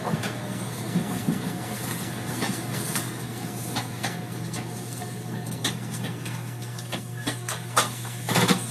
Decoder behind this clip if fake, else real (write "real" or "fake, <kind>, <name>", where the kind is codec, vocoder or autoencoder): fake, codec, SNAC